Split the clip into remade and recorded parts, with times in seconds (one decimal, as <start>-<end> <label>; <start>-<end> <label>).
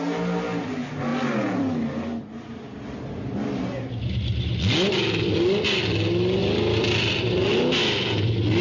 0.0-8.6 recorded